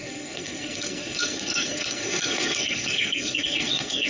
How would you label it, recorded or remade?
remade